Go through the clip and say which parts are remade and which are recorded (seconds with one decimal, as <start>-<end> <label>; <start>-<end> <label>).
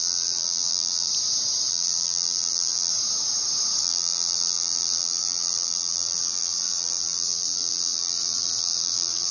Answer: 0.0-1.1 remade; 1.1-1.7 recorded; 1.7-2.9 remade; 2.9-3.8 recorded; 3.8-9.3 remade